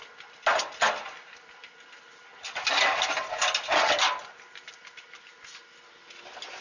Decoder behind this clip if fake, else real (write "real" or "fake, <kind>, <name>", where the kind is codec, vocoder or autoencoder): real